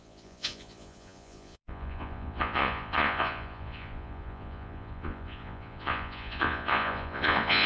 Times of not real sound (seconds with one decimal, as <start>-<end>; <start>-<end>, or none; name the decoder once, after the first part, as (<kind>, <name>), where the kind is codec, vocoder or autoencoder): 0.0-7.7 (vocoder, Vocos)